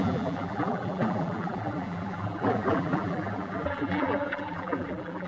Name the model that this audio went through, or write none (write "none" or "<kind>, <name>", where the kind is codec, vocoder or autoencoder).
vocoder, BigVGAN v2